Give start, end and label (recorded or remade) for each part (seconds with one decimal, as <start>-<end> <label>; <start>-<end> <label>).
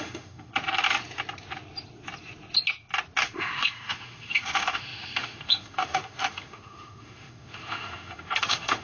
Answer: 0.0-0.5 remade; 0.5-3.2 recorded; 3.2-8.8 remade